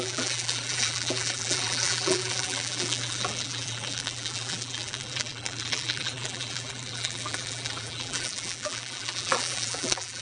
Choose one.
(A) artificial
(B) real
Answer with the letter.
A